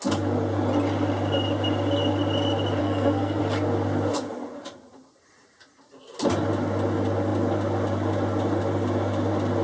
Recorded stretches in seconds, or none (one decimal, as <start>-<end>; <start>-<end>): 0.0-2.8; 3.4-9.6